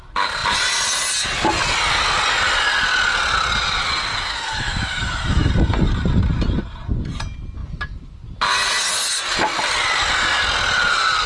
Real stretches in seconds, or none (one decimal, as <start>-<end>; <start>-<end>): 0.0-4.1; 5.5-11.3